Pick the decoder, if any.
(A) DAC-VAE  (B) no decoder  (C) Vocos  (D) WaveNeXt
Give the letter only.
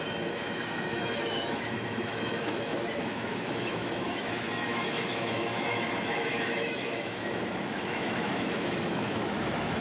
A